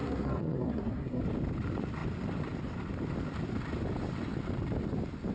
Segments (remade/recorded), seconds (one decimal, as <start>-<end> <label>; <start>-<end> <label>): 0.0-1.2 remade; 1.2-5.3 recorded